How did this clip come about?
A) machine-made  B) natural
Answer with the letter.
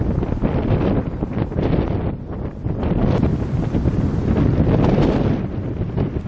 B